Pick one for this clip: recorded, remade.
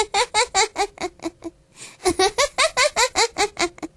recorded